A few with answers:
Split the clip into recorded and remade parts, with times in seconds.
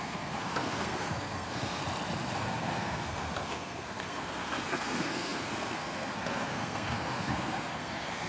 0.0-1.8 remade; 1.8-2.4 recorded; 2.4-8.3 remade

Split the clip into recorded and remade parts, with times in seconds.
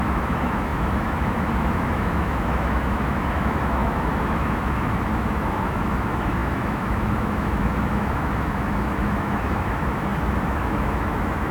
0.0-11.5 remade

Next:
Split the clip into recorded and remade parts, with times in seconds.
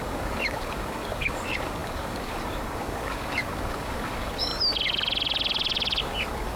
0.0-4.5 remade; 4.5-6.0 recorded; 6.0-6.6 remade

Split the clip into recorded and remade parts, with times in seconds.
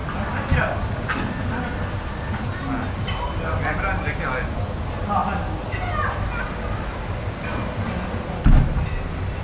0.0-9.4 recorded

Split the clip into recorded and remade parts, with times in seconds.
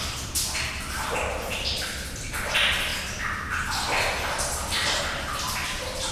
0.0-6.1 recorded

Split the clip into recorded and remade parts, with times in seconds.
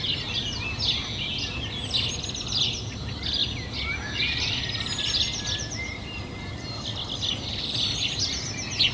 0.0-8.9 recorded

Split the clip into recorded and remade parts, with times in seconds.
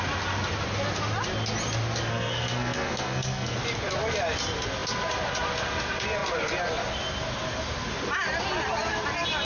0.0-2.1 recorded; 2.1-3.6 remade; 3.6-9.4 recorded